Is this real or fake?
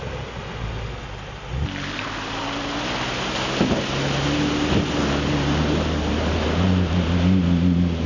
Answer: real